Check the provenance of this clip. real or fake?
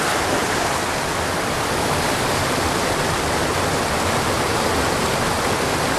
real